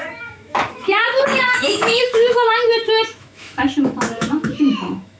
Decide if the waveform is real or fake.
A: fake